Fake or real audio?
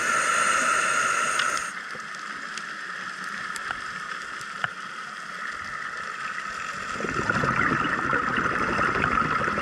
real